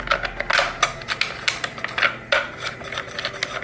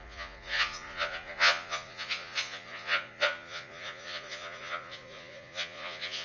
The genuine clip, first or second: first